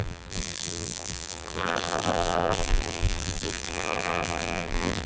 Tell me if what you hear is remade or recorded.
remade